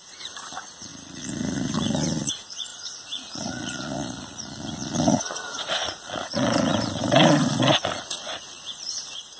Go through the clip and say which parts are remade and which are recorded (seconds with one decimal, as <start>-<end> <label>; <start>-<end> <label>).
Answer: 0.0-9.4 remade